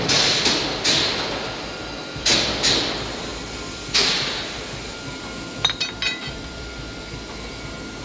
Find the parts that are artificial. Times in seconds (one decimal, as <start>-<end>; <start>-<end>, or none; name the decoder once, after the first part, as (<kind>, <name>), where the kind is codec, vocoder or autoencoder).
none